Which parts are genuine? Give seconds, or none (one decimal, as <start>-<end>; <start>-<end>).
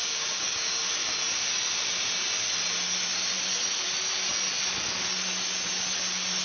0.8-6.4